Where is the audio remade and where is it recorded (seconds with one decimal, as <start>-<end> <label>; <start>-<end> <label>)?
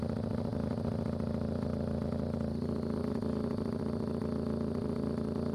0.0-5.5 recorded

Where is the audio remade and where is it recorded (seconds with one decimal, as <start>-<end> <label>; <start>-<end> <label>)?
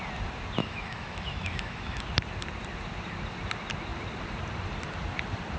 0.0-0.6 recorded; 0.6-2.0 remade; 2.0-5.6 recorded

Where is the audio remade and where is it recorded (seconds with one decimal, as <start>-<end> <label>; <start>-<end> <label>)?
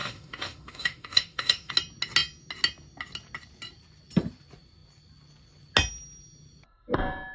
0.0-1.7 remade; 1.7-7.3 recorded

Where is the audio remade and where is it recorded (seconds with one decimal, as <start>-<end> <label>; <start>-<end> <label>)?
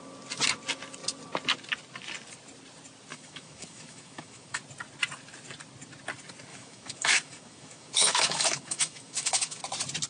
0.0-3.1 recorded; 3.1-4.6 remade; 4.6-6.5 recorded; 6.5-9.6 remade; 9.6-10.1 recorded